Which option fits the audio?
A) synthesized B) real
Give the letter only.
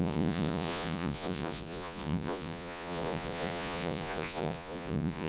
A